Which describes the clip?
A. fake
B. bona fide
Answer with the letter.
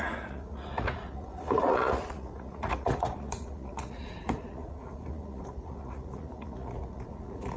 A